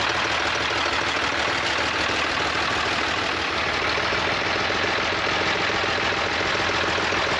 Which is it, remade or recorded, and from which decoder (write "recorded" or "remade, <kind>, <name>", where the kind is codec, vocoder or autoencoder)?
recorded